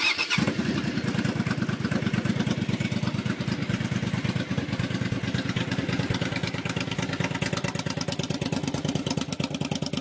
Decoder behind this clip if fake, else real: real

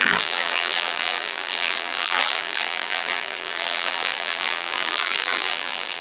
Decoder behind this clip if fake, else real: fake, vocoder, BigVGAN v2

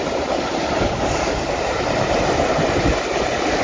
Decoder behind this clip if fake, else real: fake, vocoder, BigVGAN v2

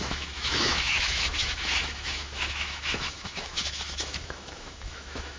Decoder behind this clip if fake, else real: fake, autoencoder, DAC-VAE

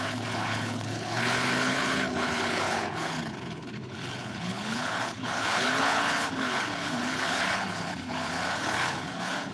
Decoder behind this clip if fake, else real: fake, codec, HILCodec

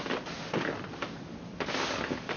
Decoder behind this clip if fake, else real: real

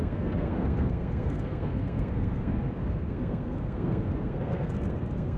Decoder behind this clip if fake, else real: fake, codec, SNAC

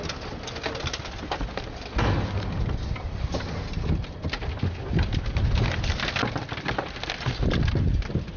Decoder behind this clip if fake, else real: real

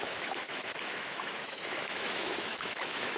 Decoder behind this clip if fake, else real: fake, autoencoder, DAC-VAE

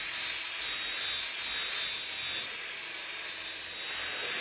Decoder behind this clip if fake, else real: real